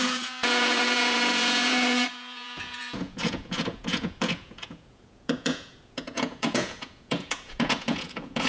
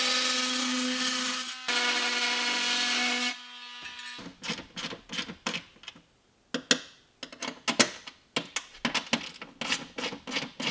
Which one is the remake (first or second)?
first